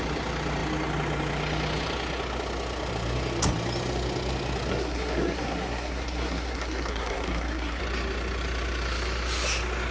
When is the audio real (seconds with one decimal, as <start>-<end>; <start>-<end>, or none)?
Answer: 0.0-4.7; 7.8-9.9